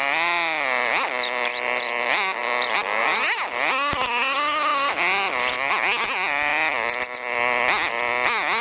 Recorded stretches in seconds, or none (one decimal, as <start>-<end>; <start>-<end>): 0.0-8.6

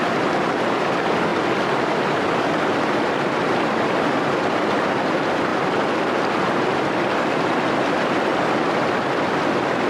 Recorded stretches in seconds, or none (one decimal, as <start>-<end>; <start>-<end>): 1.3-2.0; 5.5-7.9; 8.3-9.9

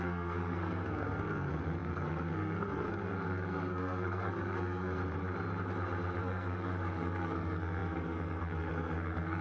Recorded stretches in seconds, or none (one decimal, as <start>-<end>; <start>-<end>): 5.0-6.2

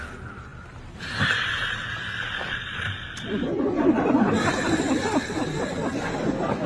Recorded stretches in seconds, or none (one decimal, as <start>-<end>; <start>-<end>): 0.0-6.7

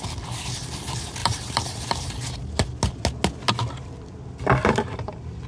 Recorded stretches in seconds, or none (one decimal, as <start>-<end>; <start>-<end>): 0.0-1.2; 2.1-5.5

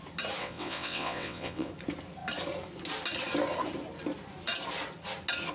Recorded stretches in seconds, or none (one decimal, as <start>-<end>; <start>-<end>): 0.0-0.4; 1.7-5.5

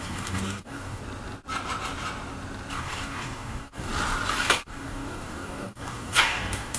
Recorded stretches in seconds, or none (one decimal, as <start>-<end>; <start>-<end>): 1.0-2.7; 3.9-4.4

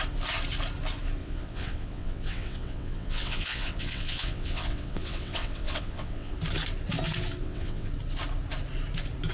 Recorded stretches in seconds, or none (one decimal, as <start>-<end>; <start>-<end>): 0.0-1.2; 6.3-7.4; 7.9-9.3